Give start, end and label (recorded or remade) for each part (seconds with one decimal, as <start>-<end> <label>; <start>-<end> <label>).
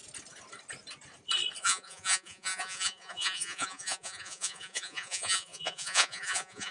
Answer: 0.0-1.6 recorded; 1.6-6.7 remade